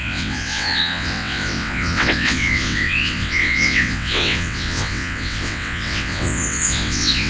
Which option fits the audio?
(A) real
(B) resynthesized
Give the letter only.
B